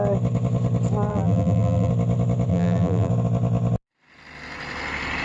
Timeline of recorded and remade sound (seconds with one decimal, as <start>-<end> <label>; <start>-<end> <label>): 0.0-1.1 recorded; 1.1-1.9 remade; 1.9-2.5 recorded; 2.5-3.1 remade; 3.1-5.2 recorded